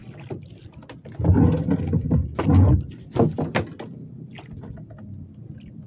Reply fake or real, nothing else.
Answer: real